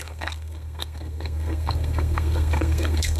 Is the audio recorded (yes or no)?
no